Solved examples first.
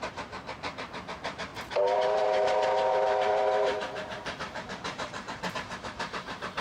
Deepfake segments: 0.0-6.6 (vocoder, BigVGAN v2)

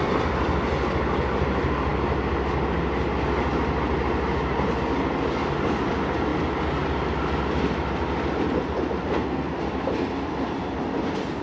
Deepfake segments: 9.0-9.5 (codec, SNAC)

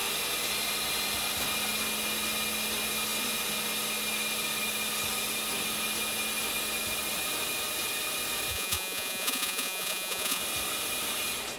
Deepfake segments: 8.5-10.4 (vocoder, Vocos)

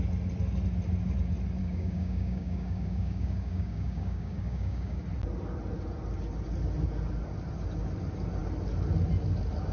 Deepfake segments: 1.6-5.0 (codec, DAC)

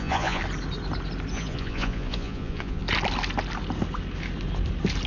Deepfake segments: 0.0-0.4 (vocoder, Vocos); 1.3-2.8